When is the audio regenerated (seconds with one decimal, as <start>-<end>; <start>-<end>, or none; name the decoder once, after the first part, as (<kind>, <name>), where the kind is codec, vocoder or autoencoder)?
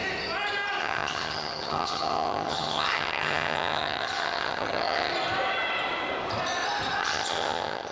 0.8-5.1 (vocoder, HiFi-GAN); 7.0-7.9